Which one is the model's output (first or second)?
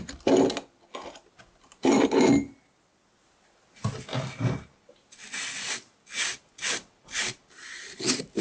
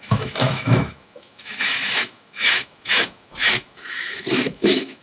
second